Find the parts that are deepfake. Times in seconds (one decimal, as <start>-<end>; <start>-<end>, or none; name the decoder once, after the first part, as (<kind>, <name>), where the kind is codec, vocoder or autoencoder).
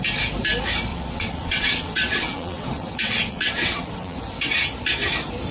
0.9-4.2 (vocoder, WaveNeXt)